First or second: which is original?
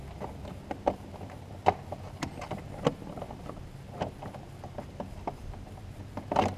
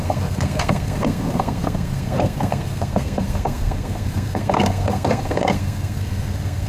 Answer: first